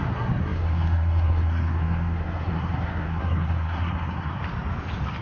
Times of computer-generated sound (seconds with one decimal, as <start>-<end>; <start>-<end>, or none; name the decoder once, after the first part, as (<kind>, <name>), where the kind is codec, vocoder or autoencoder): 0.0-4.4 (codec, SNAC)